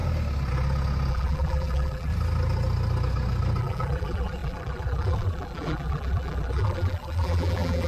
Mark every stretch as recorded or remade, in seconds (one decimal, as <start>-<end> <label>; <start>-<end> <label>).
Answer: 0.0-1.1 recorded; 1.1-2.1 remade; 2.1-3.6 recorded; 3.6-7.9 remade